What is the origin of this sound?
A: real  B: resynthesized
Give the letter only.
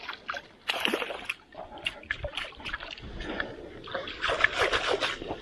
A